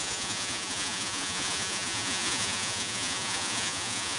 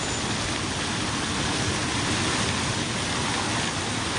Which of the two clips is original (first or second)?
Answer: second